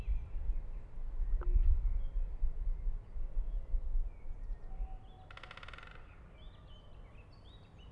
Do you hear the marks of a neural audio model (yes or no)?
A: no